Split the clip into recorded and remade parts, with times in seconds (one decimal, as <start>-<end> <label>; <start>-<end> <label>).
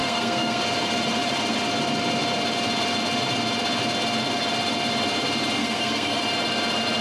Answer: 0.0-0.6 remade; 0.6-5.6 recorded; 5.6-6.2 remade; 6.2-7.0 recorded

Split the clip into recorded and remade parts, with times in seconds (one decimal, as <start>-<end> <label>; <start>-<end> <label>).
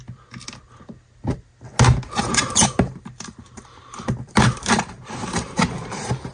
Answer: 0.0-2.2 recorded; 2.2-6.3 remade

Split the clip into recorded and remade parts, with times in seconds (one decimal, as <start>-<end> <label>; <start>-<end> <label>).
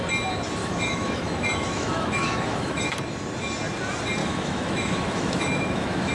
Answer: 0.0-0.6 recorded; 0.6-2.9 remade; 2.9-4.2 recorded; 4.2-6.1 remade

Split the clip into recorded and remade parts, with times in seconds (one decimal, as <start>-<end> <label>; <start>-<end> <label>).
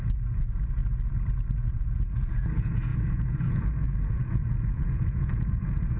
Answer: 0.0-0.8 remade; 0.8-1.5 recorded; 1.5-6.0 remade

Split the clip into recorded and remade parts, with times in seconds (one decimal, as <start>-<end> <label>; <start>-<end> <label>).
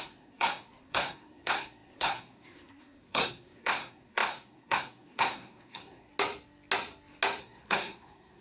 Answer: 0.0-6.1 remade; 6.1-7.4 recorded; 7.4-8.4 remade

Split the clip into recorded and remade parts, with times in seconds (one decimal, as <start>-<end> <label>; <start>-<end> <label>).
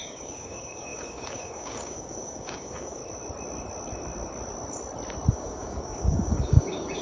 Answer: 0.0-3.0 remade; 3.0-5.3 recorded; 5.3-7.0 remade